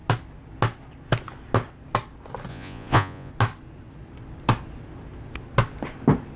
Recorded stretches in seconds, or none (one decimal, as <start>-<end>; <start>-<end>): 0.0-2.5; 3.3-6.4